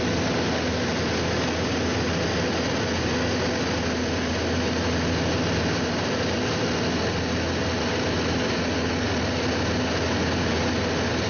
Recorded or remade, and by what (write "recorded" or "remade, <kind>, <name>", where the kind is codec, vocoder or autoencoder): recorded